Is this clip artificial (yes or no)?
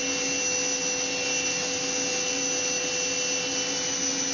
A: no